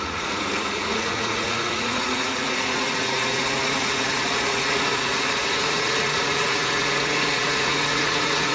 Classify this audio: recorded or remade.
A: remade